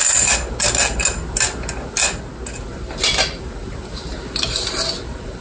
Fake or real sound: real